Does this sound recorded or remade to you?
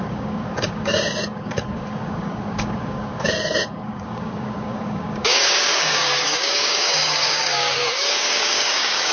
remade